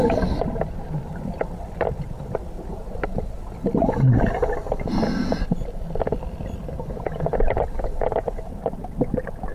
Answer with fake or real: real